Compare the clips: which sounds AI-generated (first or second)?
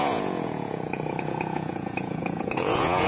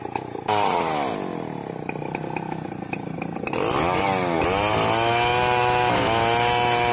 first